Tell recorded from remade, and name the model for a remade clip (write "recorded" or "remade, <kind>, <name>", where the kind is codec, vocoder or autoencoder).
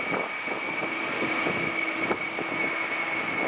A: recorded